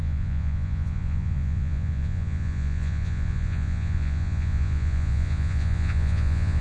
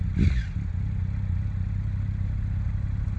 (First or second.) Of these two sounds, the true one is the second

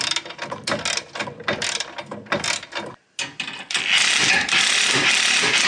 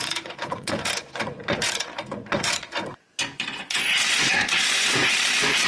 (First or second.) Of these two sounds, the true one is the first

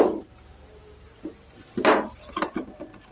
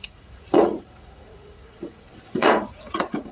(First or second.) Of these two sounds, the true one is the first